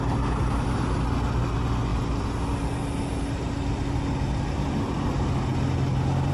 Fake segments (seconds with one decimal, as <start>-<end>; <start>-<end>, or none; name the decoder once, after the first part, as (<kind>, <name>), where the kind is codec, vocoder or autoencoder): none